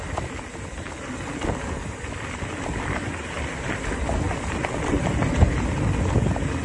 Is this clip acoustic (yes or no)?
yes